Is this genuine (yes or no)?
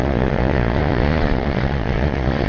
no